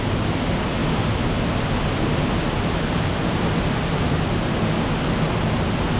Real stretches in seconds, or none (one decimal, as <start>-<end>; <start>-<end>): 0.0-6.0